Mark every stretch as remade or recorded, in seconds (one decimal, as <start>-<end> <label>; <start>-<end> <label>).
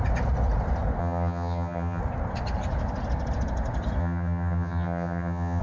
0.0-1.0 recorded; 1.0-2.0 remade; 2.0-4.0 recorded; 4.0-5.6 remade